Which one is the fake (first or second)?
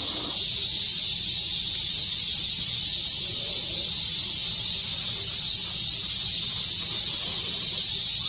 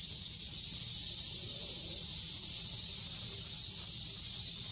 second